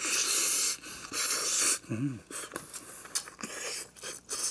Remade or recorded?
recorded